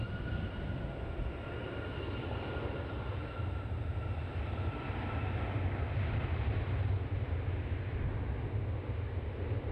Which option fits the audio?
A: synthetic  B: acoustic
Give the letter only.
B